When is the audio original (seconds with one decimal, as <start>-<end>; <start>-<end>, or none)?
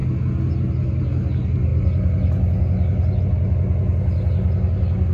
0.0-5.1